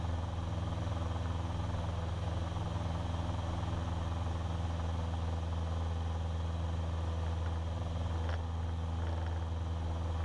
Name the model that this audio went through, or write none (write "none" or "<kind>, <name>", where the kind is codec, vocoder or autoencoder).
none